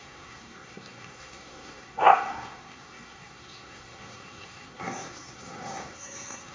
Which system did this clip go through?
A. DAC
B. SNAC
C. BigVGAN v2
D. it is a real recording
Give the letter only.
B